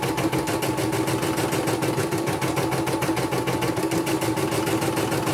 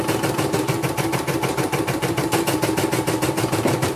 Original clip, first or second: first